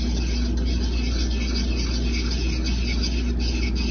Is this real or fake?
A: real